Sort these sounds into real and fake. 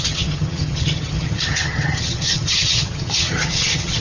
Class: fake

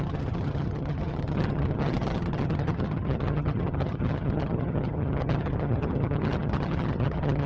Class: fake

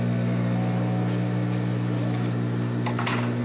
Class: real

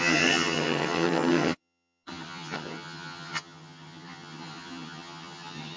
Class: fake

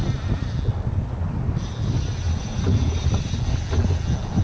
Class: real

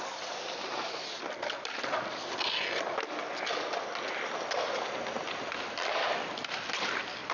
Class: real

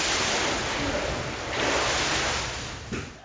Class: real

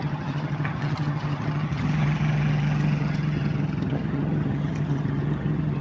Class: fake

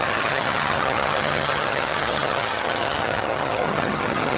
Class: fake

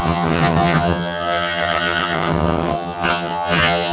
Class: fake